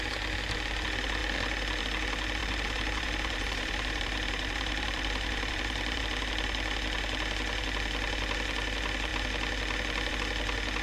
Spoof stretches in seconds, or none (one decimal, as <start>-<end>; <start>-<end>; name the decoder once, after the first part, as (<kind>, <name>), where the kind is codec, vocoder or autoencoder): 2.4-6.0 (vocoder, BigVGAN v2)